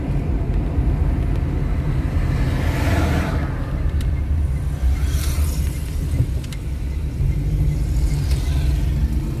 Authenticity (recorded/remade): recorded